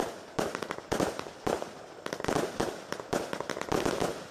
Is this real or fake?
real